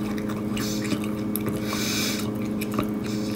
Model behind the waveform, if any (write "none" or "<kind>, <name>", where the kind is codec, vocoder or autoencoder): none